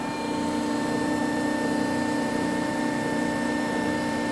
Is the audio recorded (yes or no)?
no